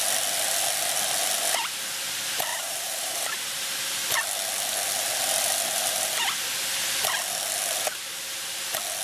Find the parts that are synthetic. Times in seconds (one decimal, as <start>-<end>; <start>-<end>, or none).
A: 2.5-3.6